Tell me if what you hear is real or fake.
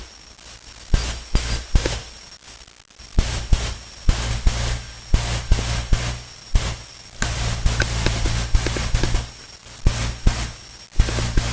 real